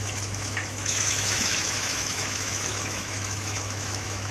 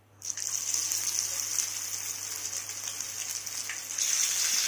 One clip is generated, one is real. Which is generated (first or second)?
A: first